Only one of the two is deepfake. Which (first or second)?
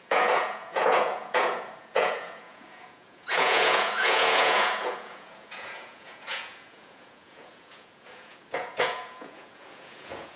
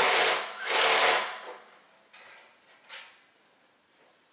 first